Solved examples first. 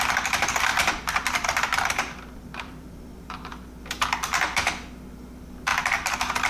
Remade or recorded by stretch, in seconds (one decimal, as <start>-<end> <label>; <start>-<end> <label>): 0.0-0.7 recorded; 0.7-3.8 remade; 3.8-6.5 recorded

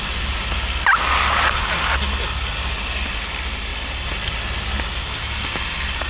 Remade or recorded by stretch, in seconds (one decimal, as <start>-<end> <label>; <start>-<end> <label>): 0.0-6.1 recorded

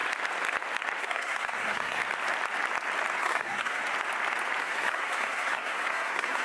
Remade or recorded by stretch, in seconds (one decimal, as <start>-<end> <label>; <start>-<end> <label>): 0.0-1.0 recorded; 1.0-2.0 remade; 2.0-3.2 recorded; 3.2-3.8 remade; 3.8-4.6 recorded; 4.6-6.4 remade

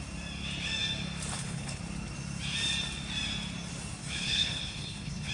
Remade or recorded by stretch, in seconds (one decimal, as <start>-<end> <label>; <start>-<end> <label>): 0.0-1.3 recorded; 1.3-1.8 remade; 1.8-4.0 recorded; 4.0-5.3 remade

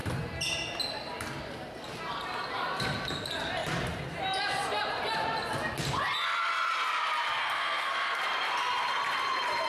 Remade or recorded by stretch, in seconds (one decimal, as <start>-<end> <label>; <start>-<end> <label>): 0.0-7.4 recorded; 7.4-8.2 remade; 8.2-9.7 recorded

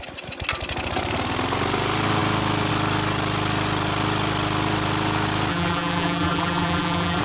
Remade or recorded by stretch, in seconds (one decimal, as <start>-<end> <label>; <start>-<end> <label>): 0.0-5.5 recorded; 5.5-7.2 remade

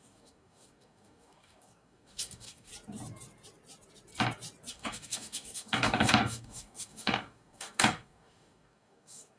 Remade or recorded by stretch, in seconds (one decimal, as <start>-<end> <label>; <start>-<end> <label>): 0.0-2.7 remade; 2.7-4.7 recorded; 4.7-9.4 remade

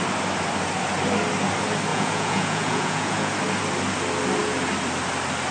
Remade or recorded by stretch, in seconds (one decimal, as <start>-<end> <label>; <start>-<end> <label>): 0.0-1.9 recorded; 1.9-3.3 remade; 3.3-5.5 recorded